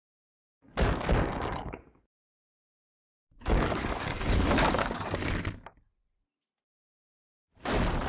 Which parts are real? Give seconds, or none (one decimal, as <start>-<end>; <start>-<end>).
0.0-0.4; 2.7-3.1; 5.3-8.1